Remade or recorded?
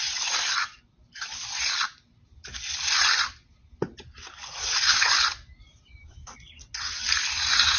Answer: recorded